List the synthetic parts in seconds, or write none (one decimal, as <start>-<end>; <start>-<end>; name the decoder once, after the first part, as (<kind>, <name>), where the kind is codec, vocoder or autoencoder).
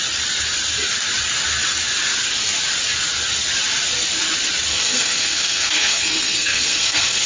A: 4.7-7.3 (codec, SNAC)